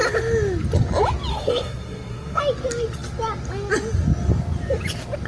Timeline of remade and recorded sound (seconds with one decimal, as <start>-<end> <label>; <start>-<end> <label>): 0.0-1.3 recorded; 1.3-2.4 remade; 2.4-5.3 recorded